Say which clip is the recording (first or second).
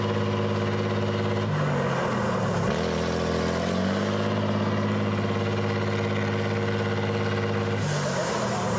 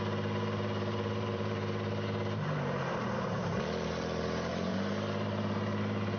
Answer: first